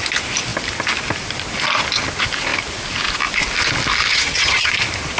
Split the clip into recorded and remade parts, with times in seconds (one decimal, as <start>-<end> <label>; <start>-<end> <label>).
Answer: 0.0-4.1 recorded; 4.1-4.7 remade; 4.7-5.2 recorded